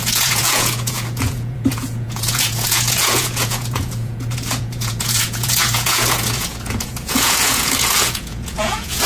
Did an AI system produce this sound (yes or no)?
yes